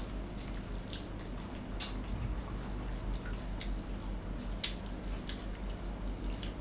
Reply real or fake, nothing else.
real